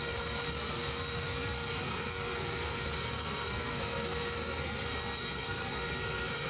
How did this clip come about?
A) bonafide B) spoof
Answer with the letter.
B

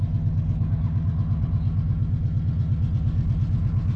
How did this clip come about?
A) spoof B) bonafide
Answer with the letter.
B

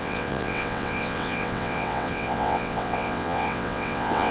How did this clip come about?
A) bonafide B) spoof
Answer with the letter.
B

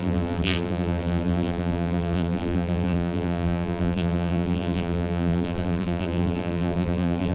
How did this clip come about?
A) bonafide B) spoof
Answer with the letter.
B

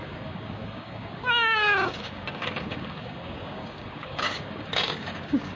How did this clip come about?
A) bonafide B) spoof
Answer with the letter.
B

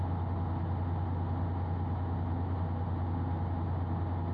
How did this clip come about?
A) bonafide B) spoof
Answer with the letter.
A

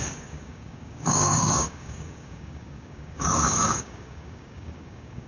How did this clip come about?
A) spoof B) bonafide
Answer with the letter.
A